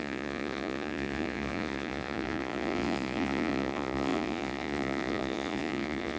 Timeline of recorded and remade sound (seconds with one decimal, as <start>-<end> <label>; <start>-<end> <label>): 0.0-6.2 remade